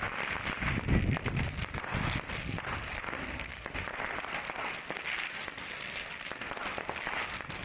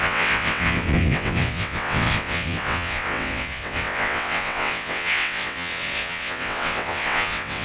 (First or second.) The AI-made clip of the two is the second